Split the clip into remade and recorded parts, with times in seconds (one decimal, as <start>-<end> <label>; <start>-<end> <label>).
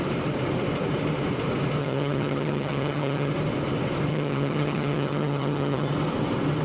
0.0-1.8 recorded; 1.8-3.3 remade; 3.3-4.1 recorded; 4.1-5.9 remade; 5.9-6.6 recorded